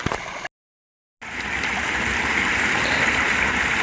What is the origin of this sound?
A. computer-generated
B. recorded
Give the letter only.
B